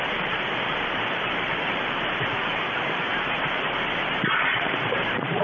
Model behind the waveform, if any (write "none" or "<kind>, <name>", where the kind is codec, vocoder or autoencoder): vocoder, BigVGAN v2